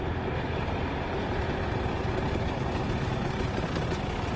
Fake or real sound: real